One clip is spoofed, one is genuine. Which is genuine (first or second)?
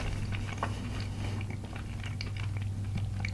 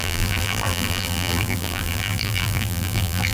first